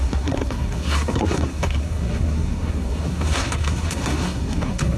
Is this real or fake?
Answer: fake